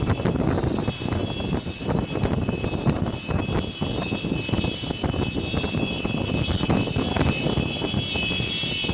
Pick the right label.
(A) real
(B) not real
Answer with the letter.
A